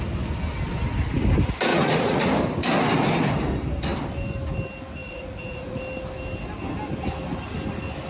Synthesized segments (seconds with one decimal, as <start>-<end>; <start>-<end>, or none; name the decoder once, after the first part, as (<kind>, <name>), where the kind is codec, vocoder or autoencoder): 1.7-2.3 (vocoder, Vocos); 5.0-5.8